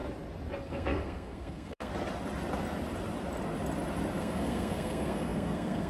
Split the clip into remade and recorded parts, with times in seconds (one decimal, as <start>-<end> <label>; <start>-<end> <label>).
0.0-0.6 recorded; 0.6-1.9 remade; 1.9-4.2 recorded; 4.2-5.9 remade